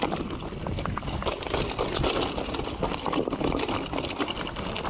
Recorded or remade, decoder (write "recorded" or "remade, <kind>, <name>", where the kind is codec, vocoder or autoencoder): recorded